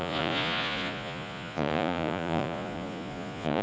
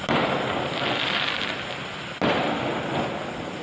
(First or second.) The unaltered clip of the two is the second